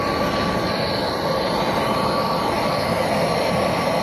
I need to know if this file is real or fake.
real